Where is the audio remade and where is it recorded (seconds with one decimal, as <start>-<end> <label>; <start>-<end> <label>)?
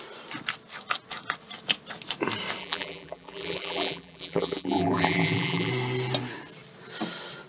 0.0-2.6 recorded; 2.6-5.7 remade; 5.7-7.5 recorded